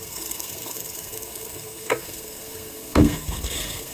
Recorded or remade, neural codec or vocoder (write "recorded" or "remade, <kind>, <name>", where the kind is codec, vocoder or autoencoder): remade, codec, SNAC